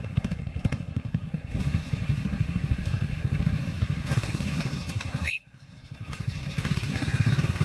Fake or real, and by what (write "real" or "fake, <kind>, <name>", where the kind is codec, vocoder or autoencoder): fake, codec, SNAC